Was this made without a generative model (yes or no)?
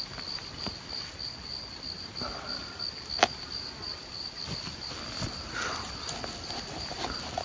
yes